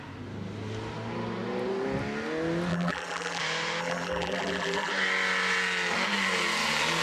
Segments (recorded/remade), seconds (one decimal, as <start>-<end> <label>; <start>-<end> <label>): 0.0-2.7 recorded; 2.7-3.4 remade; 3.4-3.8 recorded; 3.8-4.9 remade; 4.9-7.0 recorded